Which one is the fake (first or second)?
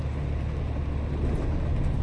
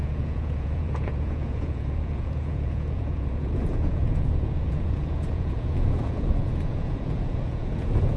second